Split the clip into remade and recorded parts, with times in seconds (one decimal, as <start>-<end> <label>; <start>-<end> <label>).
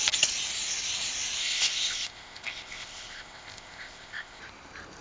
0.0-1.4 recorded; 1.4-4.4 remade; 4.4-5.0 recorded